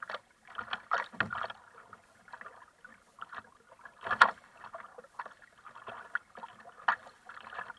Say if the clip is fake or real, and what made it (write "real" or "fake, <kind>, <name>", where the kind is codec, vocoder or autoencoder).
real